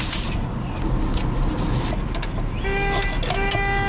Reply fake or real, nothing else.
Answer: real